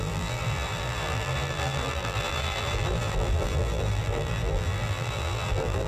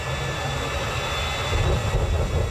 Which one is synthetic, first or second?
first